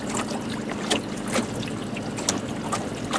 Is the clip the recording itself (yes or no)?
yes